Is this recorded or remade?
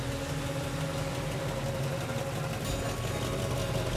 recorded